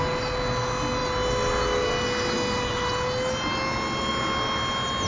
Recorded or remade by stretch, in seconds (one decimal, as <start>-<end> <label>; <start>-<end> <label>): 0.0-5.1 recorded